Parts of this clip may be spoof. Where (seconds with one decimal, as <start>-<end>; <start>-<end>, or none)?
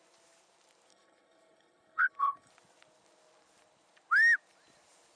0.9-2.5